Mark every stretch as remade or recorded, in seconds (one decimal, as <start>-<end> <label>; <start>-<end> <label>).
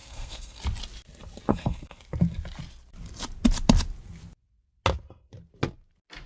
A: 0.0-0.6 remade; 0.6-1.5 recorded; 1.5-2.0 remade; 2.0-6.3 recorded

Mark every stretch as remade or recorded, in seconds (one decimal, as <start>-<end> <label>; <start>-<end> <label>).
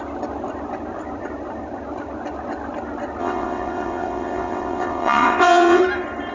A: 0.0-3.2 recorded; 3.2-5.8 remade; 5.8-6.3 recorded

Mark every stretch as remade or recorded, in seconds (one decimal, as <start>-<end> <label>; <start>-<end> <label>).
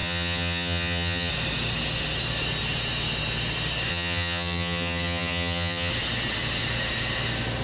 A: 0.0-1.3 remade; 1.3-3.9 recorded; 3.9-5.9 remade; 5.9-7.6 recorded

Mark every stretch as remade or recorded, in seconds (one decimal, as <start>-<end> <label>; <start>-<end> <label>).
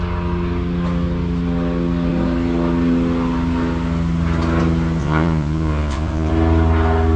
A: 0.0-5.0 recorded; 5.0-6.3 remade; 6.3-7.2 recorded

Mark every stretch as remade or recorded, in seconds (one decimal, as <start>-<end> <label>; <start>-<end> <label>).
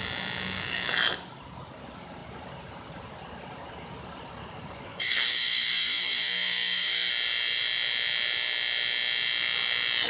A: 0.0-4.9 recorded; 4.9-7.1 remade; 7.1-10.1 recorded